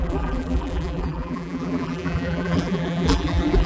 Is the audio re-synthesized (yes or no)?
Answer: yes